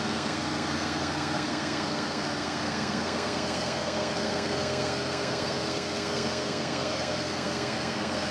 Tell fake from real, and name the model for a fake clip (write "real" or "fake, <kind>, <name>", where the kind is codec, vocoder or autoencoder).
fake, codec, SNAC